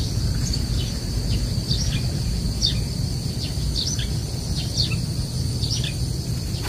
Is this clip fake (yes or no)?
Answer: no